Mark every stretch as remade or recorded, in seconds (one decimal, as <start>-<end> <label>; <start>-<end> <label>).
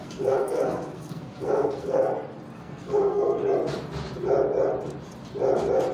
0.0-2.1 remade; 2.1-2.6 recorded; 2.6-3.4 remade; 3.4-5.9 recorded